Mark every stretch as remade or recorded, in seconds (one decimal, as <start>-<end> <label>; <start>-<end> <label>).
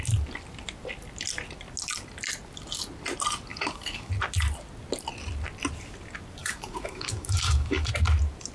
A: 0.0-3.5 recorded; 3.5-4.1 remade; 4.1-6.4 recorded; 6.4-7.9 remade; 7.9-8.5 recorded